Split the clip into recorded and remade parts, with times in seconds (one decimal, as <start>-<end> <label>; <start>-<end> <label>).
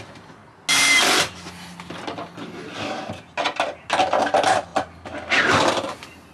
0.0-0.4 remade; 0.4-4.2 recorded; 4.2-4.7 remade; 4.7-6.3 recorded